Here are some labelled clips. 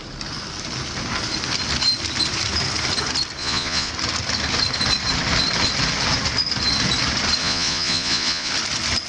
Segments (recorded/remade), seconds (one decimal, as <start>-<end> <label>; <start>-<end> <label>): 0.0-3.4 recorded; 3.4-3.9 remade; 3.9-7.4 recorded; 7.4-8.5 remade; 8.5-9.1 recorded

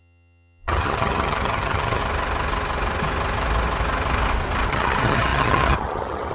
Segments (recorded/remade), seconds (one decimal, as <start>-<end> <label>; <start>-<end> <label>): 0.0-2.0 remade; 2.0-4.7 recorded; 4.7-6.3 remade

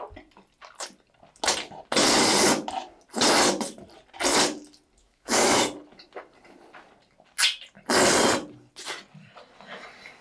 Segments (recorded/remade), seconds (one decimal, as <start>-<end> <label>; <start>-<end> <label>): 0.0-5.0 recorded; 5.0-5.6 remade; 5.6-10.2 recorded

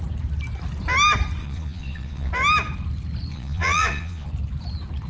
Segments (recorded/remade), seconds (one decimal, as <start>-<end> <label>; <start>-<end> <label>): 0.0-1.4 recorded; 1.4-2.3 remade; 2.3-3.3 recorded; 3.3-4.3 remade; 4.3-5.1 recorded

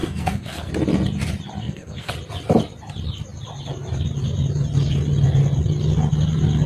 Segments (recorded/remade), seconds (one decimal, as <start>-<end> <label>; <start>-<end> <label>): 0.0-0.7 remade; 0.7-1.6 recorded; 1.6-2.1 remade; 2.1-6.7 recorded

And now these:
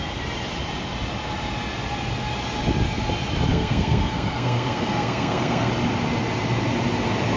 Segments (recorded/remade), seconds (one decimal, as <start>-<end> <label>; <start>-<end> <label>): 0.0-3.5 recorded; 3.5-5.7 remade; 5.7-7.4 recorded

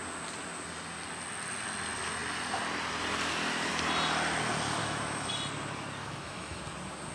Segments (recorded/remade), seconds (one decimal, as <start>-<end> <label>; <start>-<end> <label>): 0.0-4.8 recorded; 4.8-5.3 remade; 5.3-6.0 recorded; 6.0-6.6 remade; 6.6-7.1 recorded